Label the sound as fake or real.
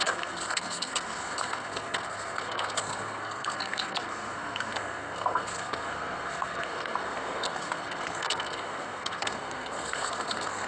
fake